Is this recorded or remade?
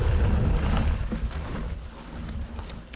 recorded